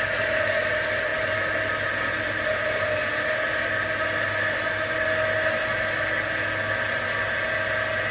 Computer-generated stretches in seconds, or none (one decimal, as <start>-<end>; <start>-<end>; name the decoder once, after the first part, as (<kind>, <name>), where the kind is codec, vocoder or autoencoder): none